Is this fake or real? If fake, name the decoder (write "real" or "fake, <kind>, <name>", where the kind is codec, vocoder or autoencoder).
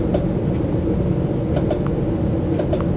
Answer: real